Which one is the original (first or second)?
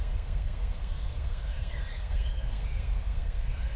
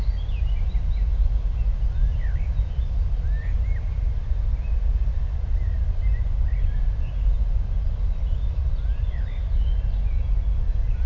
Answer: second